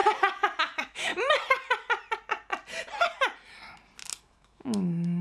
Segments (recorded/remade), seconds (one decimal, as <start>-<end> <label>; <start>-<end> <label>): 0.0-0.6 recorded; 0.6-1.1 remade; 1.1-4.2 recorded; 4.2-5.2 remade